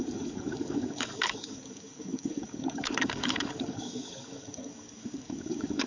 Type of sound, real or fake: fake